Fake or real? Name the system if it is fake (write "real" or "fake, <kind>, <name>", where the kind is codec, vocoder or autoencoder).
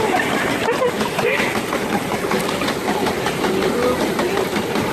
real